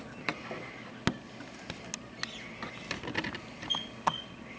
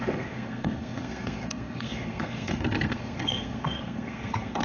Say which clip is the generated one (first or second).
second